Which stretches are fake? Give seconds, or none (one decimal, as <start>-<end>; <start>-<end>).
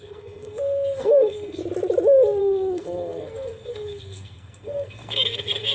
0.0-1.6; 2.4-5.7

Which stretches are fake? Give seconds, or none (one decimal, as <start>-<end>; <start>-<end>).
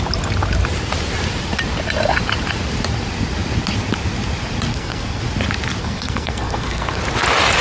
4.7-5.2; 5.8-7.0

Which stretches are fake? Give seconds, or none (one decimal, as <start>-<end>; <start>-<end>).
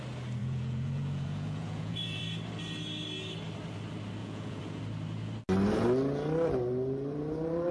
0.4-2.2; 4.2-4.8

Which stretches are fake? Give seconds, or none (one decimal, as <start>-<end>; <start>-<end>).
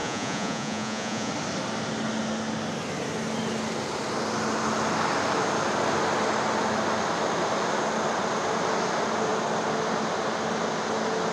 0.0-1.3